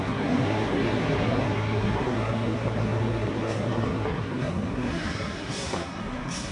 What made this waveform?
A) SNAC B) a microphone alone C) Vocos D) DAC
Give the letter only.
A